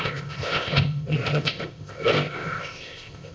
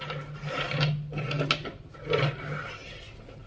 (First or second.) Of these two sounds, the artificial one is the first